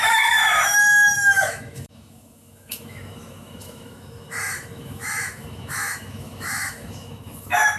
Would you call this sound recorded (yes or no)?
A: no